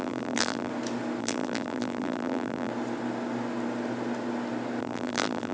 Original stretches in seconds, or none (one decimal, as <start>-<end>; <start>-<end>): 0.7-1.2; 2.7-4.8